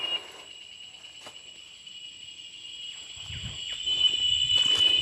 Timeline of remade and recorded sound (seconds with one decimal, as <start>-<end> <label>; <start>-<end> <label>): 0.0-5.0 recorded